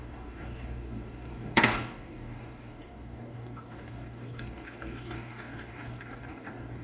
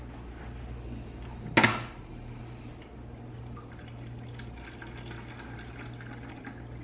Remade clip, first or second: first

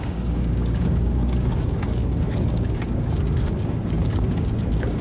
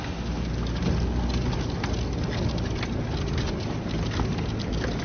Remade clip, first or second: first